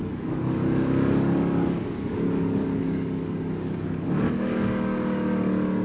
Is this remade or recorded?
remade